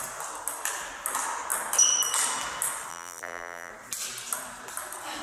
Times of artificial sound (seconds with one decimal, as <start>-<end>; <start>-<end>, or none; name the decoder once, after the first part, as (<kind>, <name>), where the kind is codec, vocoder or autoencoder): 2.9-3.7 (vocoder, BigVGAN v2)